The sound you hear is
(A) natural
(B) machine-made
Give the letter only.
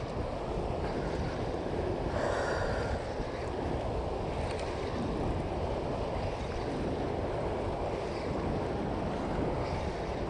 A